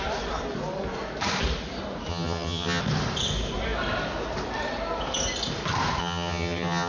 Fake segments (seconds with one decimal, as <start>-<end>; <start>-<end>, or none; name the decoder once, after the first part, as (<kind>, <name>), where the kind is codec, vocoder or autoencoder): 2.1-2.8 (vocoder, HiFi-GAN); 6.0-6.9